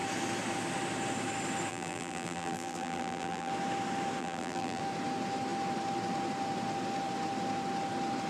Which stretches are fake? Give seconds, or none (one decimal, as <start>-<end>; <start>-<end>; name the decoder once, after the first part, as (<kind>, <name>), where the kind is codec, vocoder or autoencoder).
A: 1.7-3.5 (vocoder, BigVGAN v2); 4.2-4.8